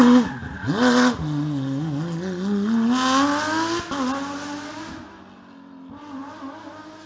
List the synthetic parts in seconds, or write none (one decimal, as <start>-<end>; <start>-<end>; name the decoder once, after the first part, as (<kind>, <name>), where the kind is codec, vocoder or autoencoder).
none